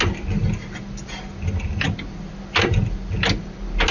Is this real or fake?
real